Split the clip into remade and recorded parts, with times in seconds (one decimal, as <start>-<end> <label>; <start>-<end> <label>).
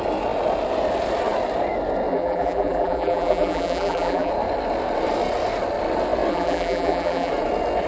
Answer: 0.0-2.1 recorded; 2.1-4.3 remade; 4.3-6.3 recorded; 6.3-7.3 remade; 7.3-7.9 recorded